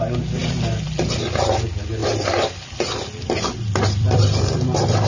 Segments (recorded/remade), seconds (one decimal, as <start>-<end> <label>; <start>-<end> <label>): 0.0-0.4 recorded; 0.4-1.0 remade; 1.0-2.0 recorded; 2.0-5.1 remade